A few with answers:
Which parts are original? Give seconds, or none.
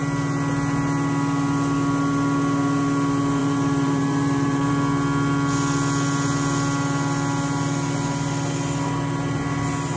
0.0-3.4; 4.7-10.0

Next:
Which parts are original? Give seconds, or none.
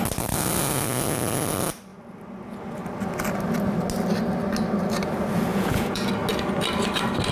0.0-5.5; 6.1-7.3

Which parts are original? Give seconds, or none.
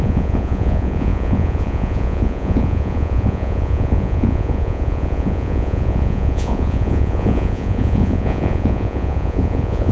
none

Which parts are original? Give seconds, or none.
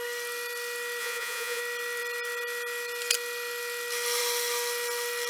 0.0-1.0; 1.6-5.3